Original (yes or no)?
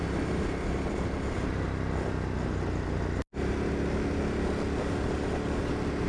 yes